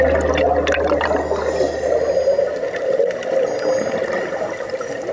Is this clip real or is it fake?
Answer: real